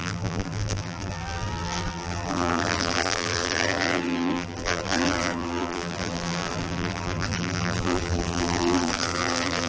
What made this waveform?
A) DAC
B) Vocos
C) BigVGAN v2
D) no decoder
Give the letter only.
C